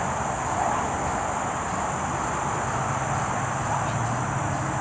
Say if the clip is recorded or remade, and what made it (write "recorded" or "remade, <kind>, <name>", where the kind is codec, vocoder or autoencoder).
recorded